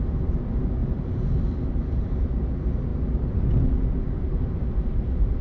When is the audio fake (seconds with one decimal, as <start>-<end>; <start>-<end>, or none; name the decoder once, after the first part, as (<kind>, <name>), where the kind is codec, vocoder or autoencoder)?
none